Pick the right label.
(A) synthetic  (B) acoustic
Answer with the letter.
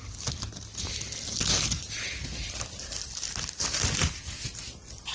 B